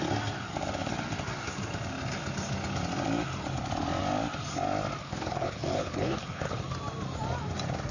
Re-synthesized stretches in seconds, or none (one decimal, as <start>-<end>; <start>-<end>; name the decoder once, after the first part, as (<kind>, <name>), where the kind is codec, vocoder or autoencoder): 5.0-6.6 (codec, HILCodec)